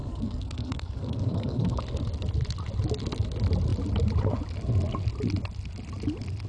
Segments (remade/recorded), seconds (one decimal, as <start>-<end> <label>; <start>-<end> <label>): 0.0-1.8 remade; 1.8-6.5 recorded

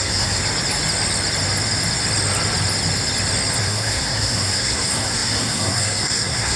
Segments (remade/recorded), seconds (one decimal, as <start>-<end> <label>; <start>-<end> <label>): 0.0-0.4 remade; 0.4-3.6 recorded; 3.6-6.6 remade

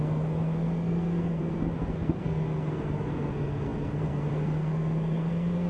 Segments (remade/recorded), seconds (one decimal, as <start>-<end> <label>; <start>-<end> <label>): 0.0-5.7 remade